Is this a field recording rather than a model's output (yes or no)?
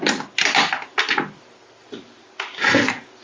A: yes